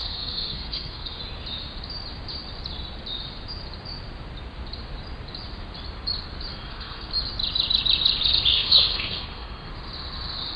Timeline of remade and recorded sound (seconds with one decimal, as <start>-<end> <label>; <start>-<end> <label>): 0.0-1.2 remade; 1.2-6.5 recorded; 6.5-7.1 remade; 7.1-8.5 recorded; 8.5-9.7 remade; 9.7-10.6 recorded